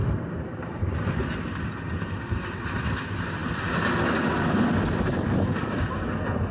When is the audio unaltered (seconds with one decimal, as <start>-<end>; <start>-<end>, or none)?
0.0-6.5